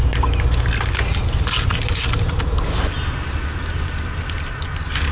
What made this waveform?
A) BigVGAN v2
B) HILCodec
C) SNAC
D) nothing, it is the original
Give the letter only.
D